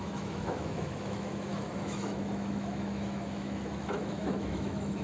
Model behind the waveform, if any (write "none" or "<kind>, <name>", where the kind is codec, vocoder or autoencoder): autoencoder, DAC-VAE